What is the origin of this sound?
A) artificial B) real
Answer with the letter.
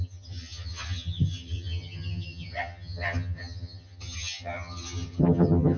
A